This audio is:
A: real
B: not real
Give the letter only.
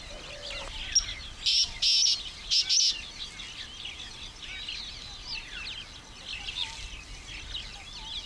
A